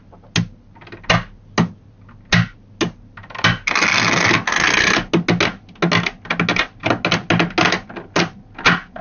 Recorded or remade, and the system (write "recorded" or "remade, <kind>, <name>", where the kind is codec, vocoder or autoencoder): recorded